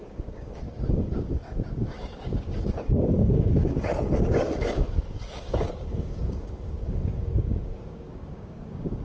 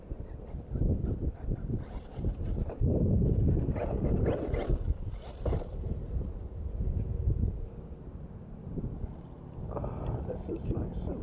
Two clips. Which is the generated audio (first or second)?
first